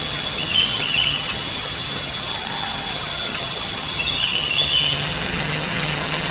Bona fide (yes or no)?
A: no